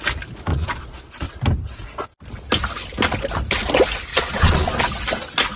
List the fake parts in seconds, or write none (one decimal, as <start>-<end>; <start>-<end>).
0.5-1.3; 4.1-4.8